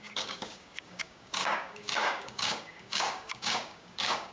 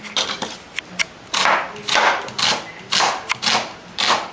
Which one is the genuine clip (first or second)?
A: second